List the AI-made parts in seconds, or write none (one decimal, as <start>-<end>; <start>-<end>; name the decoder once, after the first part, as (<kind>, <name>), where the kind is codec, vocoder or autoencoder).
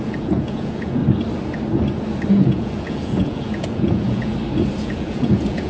0.0-1.0 (vocoder, Vocos); 2.3-4.3; 4.8-5.7